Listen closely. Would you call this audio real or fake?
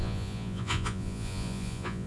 fake